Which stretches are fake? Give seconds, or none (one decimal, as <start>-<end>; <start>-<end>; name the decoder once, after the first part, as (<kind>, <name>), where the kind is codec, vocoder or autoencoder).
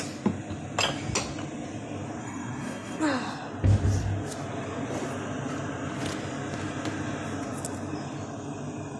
2.2-3.0 (codec, SNAC)